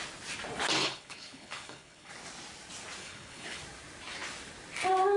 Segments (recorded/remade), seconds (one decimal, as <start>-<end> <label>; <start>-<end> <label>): 0.0-0.8 recorded; 0.8-2.1 remade; 2.1-3.0 recorded; 3.0-3.6 remade; 3.6-5.2 recorded